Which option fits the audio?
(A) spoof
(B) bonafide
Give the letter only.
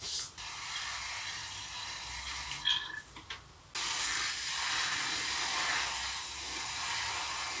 B